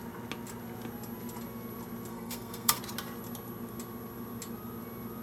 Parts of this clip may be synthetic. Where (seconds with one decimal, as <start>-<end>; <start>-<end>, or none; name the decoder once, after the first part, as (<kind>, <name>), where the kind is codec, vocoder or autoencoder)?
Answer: 2.1-2.8 (codec, SNAC)